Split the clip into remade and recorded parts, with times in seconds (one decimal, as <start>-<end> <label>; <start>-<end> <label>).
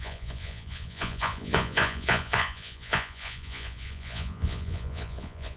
0.0-5.6 remade